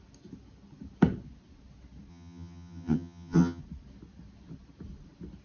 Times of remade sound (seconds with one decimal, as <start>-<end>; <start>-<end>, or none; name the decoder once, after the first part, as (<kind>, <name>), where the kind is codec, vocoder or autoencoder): 2.1-3.6 (vocoder, HiFi-GAN)